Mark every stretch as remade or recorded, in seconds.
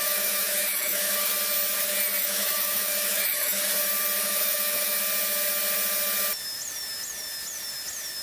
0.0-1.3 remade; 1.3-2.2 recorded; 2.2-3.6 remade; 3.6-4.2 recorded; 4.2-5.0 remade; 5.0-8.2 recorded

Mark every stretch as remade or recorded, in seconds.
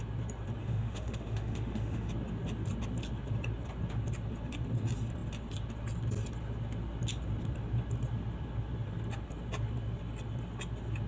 0.0-0.6 recorded; 0.6-2.1 remade; 2.1-11.1 recorded